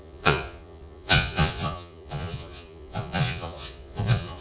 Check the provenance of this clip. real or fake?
fake